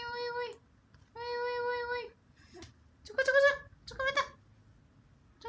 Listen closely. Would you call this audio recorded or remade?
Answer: recorded